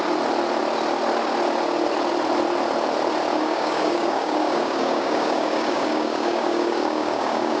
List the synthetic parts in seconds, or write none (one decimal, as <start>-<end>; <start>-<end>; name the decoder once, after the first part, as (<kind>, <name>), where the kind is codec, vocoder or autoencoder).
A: 3.3-7.6 (codec, DAC)